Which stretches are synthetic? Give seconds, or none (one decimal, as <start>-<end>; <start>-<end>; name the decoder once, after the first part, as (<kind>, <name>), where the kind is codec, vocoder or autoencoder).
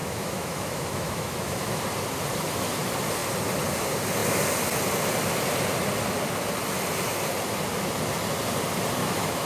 0.0-1.8 (autoencoder, DAC-VAE); 9.0-9.5